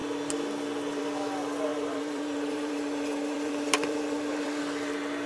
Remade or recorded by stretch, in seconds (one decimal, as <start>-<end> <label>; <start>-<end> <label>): 0.0-1.7 recorded; 1.7-4.6 remade; 4.6-5.3 recorded